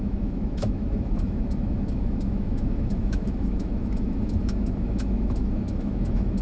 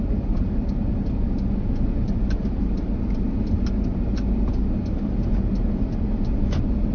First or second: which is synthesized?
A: first